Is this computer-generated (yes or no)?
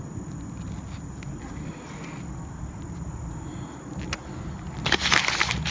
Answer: no